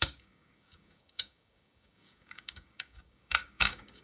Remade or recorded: remade